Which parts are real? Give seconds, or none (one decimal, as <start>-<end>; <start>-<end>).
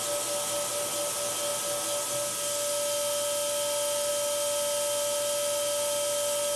0.0-6.6